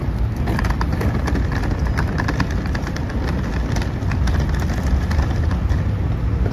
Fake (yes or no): no